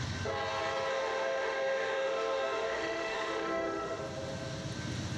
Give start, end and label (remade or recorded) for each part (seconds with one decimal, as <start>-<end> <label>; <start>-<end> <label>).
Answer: 0.0-0.9 recorded; 0.9-4.0 remade; 4.0-5.2 recorded